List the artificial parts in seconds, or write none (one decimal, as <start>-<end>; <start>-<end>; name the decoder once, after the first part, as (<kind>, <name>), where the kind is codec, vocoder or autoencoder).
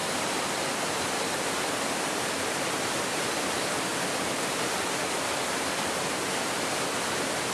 0.0-0.7 (vocoder, BigVGAN v2); 3.9-4.7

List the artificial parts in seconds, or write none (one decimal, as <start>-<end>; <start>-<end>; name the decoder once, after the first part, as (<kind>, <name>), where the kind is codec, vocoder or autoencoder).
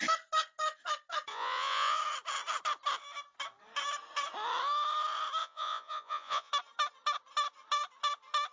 1.3-2.0 (vocoder, Vocos); 5.4-6.5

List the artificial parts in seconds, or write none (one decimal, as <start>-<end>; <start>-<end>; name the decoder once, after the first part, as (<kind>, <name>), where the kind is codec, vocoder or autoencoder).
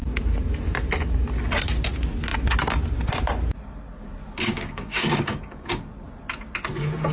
4.4-5.9 (codec, DAC)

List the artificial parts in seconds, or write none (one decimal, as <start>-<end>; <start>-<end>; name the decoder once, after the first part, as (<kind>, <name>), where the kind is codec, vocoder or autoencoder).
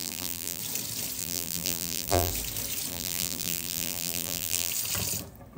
0.0-0.6 (vocoder, BigVGAN v2); 1.2-2.3; 2.9-4.7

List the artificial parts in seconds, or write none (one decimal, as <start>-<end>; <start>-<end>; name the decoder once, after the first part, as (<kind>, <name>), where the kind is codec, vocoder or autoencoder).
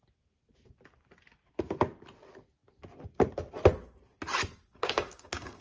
4.7-5.6 (codec, DAC)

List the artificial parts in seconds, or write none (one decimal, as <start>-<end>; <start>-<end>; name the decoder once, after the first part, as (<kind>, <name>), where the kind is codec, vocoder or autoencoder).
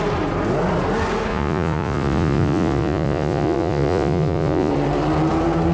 1.3-4.7 (vocoder, Vocos)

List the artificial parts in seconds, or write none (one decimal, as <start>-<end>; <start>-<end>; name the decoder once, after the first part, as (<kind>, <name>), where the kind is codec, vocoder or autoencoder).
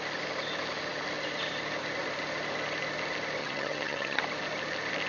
3.4-4.2 (vocoder, HiFi-GAN)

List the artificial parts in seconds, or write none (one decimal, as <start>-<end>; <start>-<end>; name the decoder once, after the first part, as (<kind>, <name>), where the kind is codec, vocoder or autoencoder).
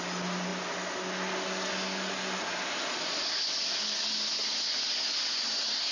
none